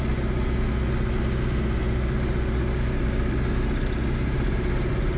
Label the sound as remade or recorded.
recorded